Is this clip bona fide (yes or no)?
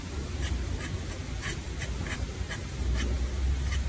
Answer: yes